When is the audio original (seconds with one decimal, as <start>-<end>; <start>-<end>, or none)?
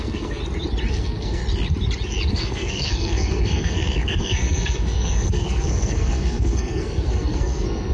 0.4-0.9; 1.4-2.3